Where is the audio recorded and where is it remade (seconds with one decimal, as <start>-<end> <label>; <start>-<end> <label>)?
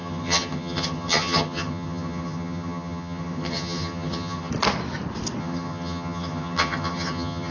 0.0-4.5 remade; 4.5-5.4 recorded; 5.4-7.5 remade